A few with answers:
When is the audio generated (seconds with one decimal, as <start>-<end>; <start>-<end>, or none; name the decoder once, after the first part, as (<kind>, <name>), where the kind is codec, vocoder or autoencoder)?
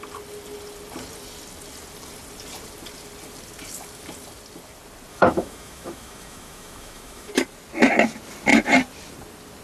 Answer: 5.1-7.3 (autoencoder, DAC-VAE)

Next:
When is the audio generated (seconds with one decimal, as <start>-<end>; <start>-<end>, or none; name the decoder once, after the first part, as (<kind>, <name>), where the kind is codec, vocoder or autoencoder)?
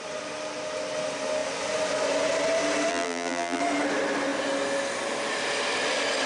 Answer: 2.9-3.6 (vocoder, BigVGAN v2)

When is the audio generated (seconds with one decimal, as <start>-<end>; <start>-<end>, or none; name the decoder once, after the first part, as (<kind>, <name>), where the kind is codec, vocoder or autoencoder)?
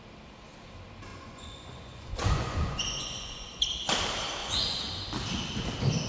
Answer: 1.1-3.6 (vocoder, Vocos); 4.4-4.9